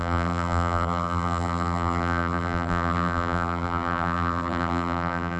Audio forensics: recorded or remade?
remade